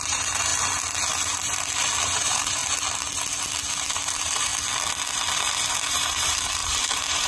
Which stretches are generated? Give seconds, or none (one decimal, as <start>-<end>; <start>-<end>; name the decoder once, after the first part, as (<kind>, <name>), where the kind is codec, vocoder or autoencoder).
0.0-0.5 (vocoder, BigVGAN v2); 2.0-2.6; 3.9-4.5; 5.7-7.3